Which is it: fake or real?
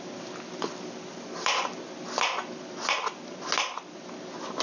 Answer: real